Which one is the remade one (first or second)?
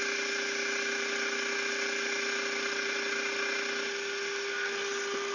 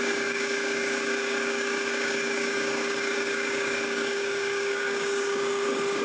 second